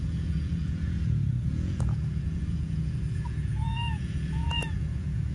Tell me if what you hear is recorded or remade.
remade